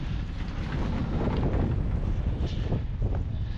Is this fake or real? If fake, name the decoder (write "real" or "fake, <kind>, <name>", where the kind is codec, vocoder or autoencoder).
real